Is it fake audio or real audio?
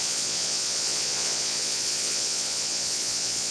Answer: fake